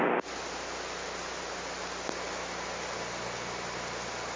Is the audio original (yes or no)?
yes